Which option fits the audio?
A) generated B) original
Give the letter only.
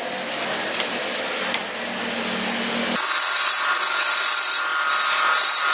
B